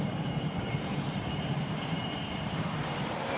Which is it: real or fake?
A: fake